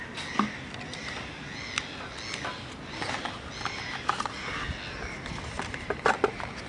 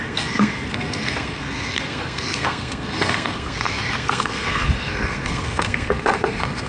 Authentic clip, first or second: first